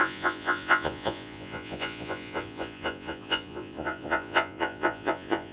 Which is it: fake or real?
fake